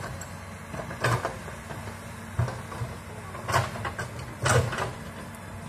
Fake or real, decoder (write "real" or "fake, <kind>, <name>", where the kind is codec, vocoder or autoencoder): real